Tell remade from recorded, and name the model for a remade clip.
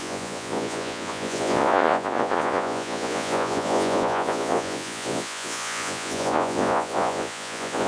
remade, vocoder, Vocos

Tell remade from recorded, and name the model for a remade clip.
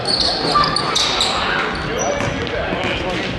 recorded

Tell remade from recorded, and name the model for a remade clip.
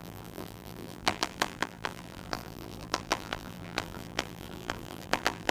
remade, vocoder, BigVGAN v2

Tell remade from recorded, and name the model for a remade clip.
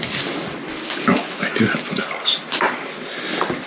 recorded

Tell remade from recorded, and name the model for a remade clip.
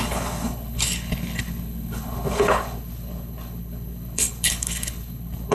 remade, codec, HILCodec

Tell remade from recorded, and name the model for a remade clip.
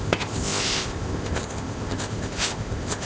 remade, codec, ZipCodec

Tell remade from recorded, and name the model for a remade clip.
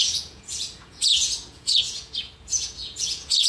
remade, vocoder, Vocos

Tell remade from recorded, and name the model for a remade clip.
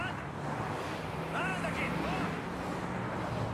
recorded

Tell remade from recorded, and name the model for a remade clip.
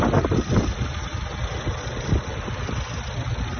recorded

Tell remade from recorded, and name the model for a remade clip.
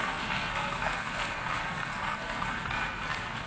remade, codec, SNAC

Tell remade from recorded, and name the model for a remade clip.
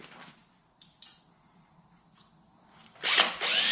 recorded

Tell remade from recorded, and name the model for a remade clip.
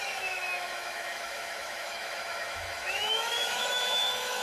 remade, autoencoder, DAC-VAE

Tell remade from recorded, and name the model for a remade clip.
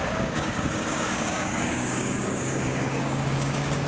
remade, codec, DAC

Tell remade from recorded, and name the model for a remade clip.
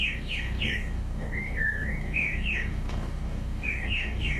remade, codec, DAC